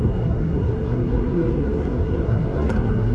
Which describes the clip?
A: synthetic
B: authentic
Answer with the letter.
A